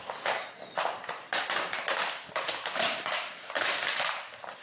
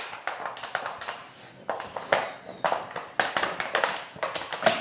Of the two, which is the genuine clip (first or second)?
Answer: second